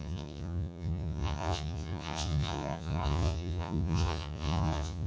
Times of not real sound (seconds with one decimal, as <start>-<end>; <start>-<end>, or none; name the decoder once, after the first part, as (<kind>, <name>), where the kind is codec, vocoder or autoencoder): 0.0-5.1 (vocoder, Vocos)